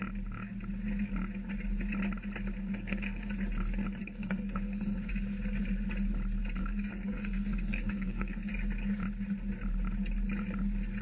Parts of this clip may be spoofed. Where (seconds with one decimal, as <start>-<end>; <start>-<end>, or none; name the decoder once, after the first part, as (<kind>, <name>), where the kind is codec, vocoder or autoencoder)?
2.6-3.3 (codec, SNAC); 4.0-5.1; 6.6-8.5